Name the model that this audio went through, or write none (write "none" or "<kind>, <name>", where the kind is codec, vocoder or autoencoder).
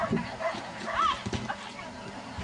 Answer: none